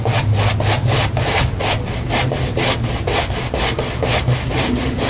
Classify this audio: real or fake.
real